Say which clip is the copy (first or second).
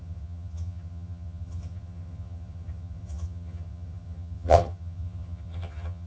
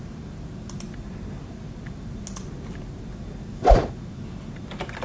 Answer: first